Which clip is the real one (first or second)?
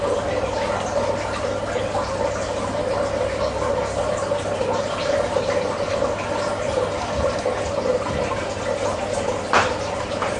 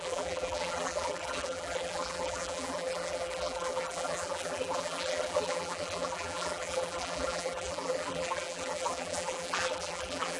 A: first